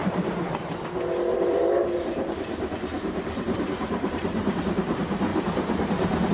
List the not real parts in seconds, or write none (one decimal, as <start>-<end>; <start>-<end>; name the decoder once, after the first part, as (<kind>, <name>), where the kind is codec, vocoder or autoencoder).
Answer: 0.0-0.7 (vocoder, BigVGAN v2); 1.3-4.6; 5.3-6.3